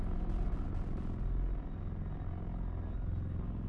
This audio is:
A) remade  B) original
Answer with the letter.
B